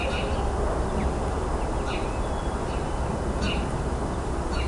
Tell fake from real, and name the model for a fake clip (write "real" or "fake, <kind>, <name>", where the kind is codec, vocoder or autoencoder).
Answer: real